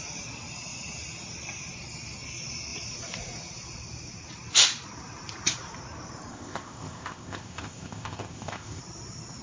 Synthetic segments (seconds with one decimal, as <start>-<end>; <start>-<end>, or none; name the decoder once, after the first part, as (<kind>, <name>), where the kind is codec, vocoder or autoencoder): 6.3-8.8 (codec, ZipCodec)